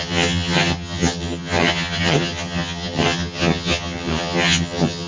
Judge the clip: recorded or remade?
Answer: remade